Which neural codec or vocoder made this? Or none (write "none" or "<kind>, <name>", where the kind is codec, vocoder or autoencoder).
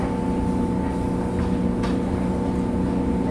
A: none